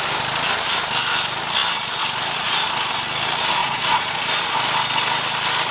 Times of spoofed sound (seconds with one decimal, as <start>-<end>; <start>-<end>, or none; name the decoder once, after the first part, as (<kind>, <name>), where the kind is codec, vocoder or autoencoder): 3.6-4.2 (vocoder, Vocos)